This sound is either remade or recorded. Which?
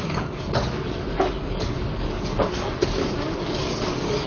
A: remade